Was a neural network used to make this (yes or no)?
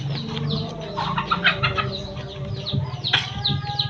no